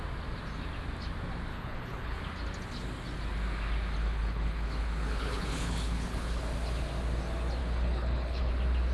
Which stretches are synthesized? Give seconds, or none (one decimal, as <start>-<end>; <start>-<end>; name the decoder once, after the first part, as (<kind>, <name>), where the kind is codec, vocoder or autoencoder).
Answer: 1.5-2.2 (codec, HILCodec); 4.0-6.5; 7.6-8.5